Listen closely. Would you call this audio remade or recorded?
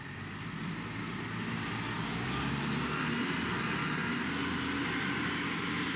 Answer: recorded